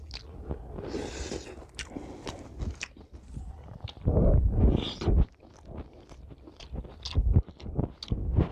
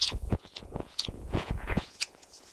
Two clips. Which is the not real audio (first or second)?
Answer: second